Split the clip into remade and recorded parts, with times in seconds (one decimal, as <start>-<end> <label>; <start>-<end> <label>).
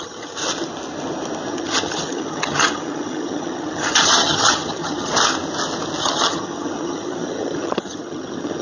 0.0-0.4 remade; 0.4-1.5 recorded; 1.5-5.1 remade; 5.1-6.0 recorded; 6.0-8.6 remade